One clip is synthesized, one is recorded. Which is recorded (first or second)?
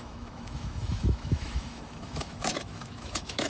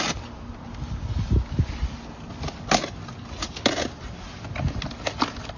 second